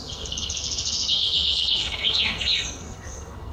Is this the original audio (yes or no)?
no